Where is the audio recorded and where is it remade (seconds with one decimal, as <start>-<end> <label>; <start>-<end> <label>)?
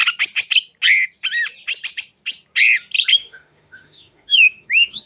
0.0-3.1 recorded; 3.1-5.1 remade